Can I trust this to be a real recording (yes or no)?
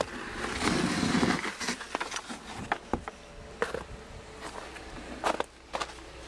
yes